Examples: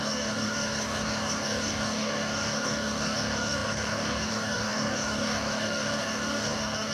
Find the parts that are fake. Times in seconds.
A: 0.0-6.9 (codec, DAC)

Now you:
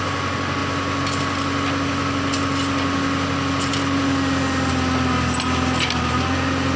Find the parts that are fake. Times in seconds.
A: none

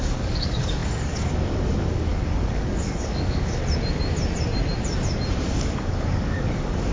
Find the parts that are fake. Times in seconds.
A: 0.0-3.6 (codec, DAC); 5.4-6.9

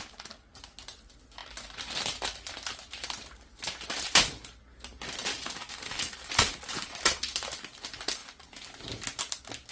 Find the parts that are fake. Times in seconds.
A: 5.3-6.3 (codec, DAC)

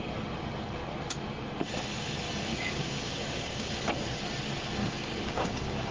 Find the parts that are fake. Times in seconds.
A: 2.5-3.7 (codec, DAC); 4.8-5.9